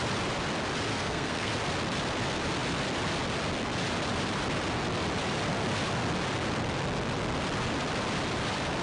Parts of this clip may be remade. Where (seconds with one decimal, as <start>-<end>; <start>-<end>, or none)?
0.9-1.5